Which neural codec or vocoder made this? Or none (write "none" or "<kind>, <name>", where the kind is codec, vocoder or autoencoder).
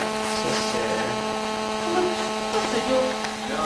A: none